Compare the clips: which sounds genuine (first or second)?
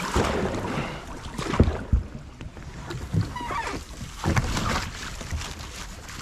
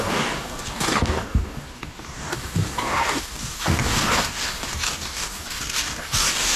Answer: first